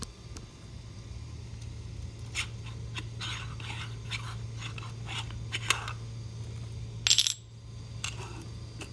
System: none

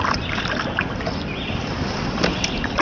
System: vocoder, BigVGAN v2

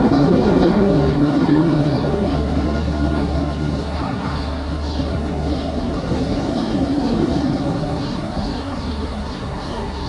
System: codec, SNAC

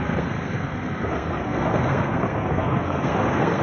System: codec, SNAC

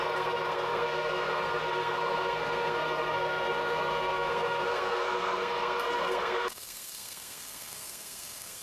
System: codec, SNAC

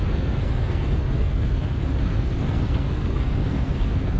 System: codec, SNAC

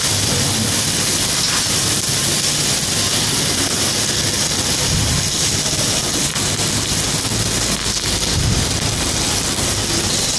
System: none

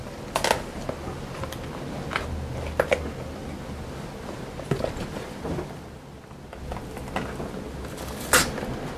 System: none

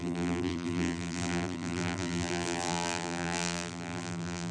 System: vocoder, BigVGAN v2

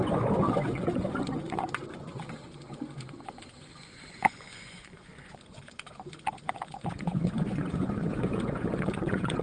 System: vocoder, Vocos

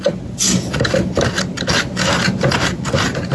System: none